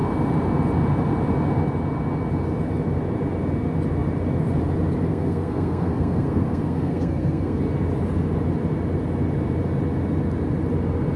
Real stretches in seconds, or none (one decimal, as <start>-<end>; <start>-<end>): 0.0-5.1; 7.6-11.2